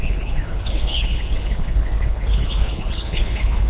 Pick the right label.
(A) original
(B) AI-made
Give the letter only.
B